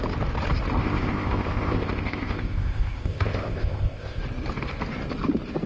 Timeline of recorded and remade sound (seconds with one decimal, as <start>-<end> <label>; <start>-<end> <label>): 0.0-0.8 recorded; 0.8-4.2 remade; 4.2-5.7 recorded